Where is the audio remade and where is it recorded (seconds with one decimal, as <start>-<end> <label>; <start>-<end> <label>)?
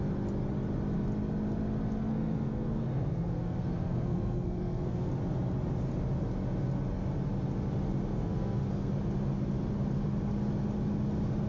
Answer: 0.0-2.1 recorded; 2.1-5.1 remade; 5.1-8.1 recorded; 8.1-8.9 remade; 8.9-11.5 recorded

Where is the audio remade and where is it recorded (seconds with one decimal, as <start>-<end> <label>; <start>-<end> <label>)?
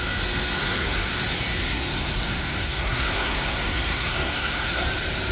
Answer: 0.0-0.6 recorded; 0.6-1.1 remade; 1.1-1.6 recorded; 1.6-4.8 remade; 4.8-5.3 recorded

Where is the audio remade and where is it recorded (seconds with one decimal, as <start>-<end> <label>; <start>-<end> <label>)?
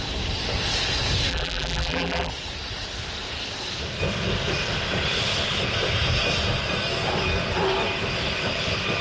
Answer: 0.0-1.3 recorded; 1.3-2.3 remade; 2.3-9.0 recorded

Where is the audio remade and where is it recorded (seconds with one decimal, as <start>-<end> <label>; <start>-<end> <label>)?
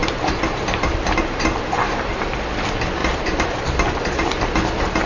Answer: 0.0-2.1 remade; 2.1-3.0 recorded; 3.0-4.4 remade; 4.4-5.1 recorded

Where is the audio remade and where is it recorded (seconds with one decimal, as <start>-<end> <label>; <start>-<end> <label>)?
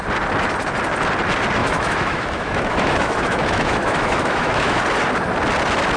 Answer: 0.0-1.6 recorded; 1.6-4.8 remade; 4.8-6.0 recorded